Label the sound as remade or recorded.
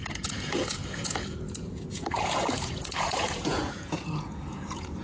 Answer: remade